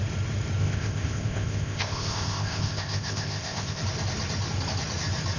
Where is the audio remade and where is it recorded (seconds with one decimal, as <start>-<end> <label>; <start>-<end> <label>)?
0.0-0.6 recorded; 0.6-3.8 remade; 3.8-5.4 recorded